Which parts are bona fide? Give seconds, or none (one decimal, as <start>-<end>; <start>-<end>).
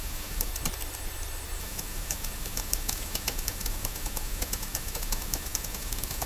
0.5-1.6